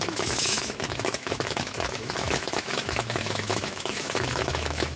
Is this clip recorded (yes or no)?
no